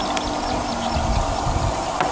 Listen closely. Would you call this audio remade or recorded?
recorded